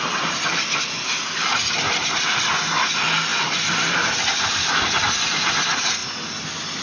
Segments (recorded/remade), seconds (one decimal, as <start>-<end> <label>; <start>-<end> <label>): 0.0-3.3 recorded; 3.3-4.7 remade; 4.7-6.8 recorded